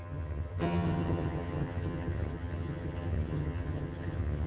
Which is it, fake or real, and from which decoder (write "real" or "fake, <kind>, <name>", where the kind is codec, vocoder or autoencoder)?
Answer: fake, vocoder, HiFi-GAN